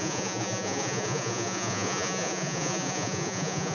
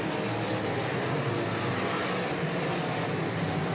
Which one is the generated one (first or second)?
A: first